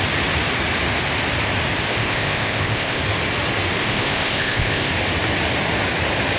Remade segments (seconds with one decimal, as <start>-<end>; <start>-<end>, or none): 1.9-3.0; 3.8-4.9